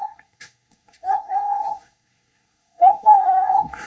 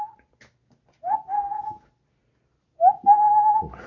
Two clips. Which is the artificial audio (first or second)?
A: first